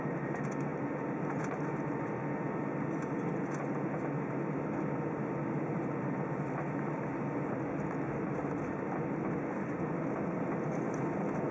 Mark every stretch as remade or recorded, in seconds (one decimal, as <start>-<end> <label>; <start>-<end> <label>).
0.0-11.5 recorded

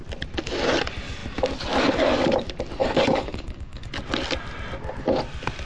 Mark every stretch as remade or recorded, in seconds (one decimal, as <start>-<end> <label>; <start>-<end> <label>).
0.0-2.8 recorded; 2.8-3.9 remade; 3.9-5.7 recorded

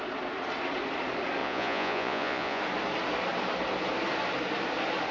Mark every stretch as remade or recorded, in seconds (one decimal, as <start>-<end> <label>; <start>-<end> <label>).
0.0-1.4 recorded; 1.4-2.6 remade; 2.6-5.1 recorded

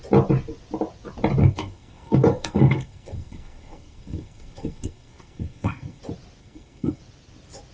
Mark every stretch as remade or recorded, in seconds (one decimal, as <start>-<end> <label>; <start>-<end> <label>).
0.0-1.4 recorded; 1.4-6.0 remade; 6.0-6.4 recorded; 6.4-7.0 remade; 7.0-7.7 recorded